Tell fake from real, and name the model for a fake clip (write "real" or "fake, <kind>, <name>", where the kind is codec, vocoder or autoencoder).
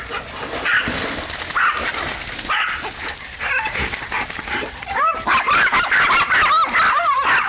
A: real